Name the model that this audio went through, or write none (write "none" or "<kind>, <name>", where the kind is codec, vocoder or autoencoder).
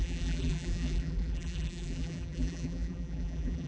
vocoder, BigVGAN v2